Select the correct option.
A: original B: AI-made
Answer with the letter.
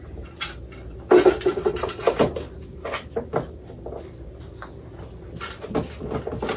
A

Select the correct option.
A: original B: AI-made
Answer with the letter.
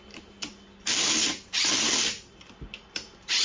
A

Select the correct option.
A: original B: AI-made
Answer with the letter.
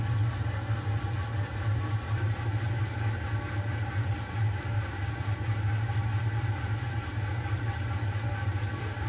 A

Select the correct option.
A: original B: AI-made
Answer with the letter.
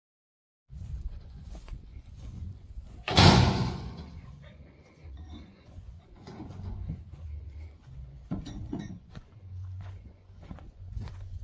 B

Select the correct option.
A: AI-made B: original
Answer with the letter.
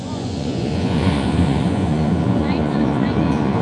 A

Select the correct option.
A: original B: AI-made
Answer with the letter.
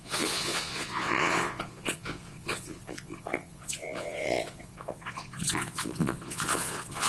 B